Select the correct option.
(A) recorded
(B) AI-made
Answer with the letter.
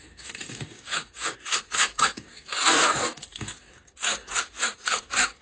B